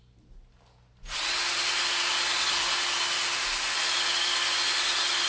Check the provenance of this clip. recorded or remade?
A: recorded